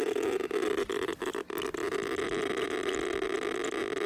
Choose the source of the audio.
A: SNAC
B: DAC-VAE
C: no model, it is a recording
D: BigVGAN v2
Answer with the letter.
C